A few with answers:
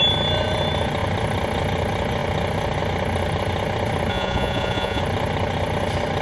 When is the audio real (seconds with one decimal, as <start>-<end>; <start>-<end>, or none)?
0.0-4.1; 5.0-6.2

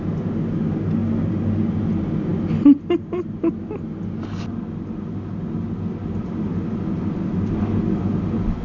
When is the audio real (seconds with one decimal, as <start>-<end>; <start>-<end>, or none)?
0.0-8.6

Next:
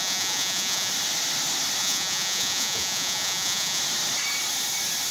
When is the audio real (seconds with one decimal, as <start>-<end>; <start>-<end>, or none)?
0.9-1.8; 3.8-5.1

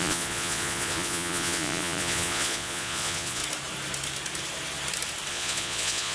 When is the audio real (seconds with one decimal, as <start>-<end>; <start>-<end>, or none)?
3.4-5.3